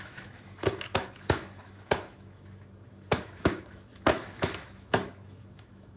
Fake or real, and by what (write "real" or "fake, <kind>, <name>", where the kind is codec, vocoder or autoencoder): fake, autoencoder, DAC-VAE